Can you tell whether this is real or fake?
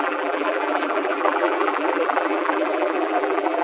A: fake